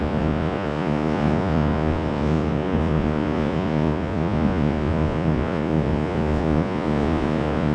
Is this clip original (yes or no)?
no